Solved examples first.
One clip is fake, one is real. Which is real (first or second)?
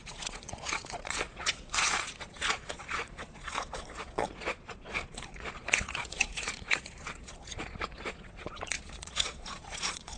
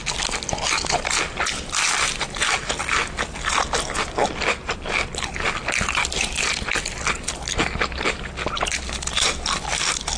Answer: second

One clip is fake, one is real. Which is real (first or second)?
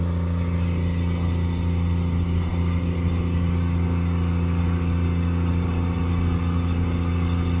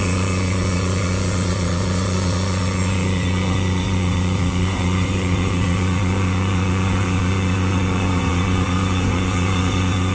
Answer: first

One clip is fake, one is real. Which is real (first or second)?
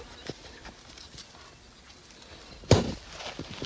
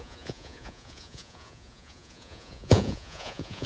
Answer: first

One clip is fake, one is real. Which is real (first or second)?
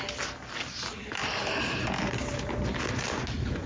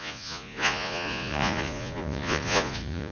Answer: first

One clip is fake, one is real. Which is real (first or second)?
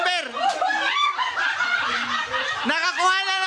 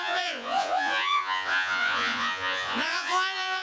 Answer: first